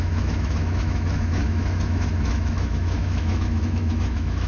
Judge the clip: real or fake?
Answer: fake